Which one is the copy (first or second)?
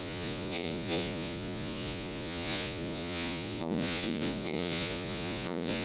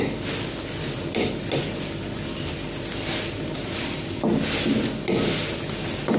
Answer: first